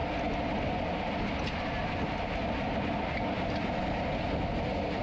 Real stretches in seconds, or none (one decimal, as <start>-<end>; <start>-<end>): 0.0-5.0